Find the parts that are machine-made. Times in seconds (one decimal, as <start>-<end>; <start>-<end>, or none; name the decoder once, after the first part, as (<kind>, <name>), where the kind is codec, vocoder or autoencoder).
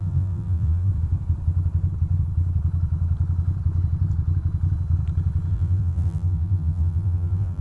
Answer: 0.0-0.9 (vocoder, BigVGAN v2); 5.5-7.6